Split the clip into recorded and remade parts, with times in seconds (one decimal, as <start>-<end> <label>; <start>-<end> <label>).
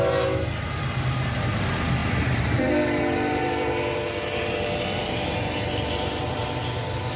0.0-2.0 recorded; 2.0-3.5 remade; 3.5-5.0 recorded; 5.0-6.3 remade; 6.3-7.2 recorded